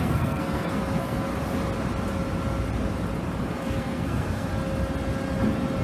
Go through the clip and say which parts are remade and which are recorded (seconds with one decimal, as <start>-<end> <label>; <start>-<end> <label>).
0.0-1.3 remade; 1.3-3.4 recorded; 3.4-4.5 remade; 4.5-5.8 recorded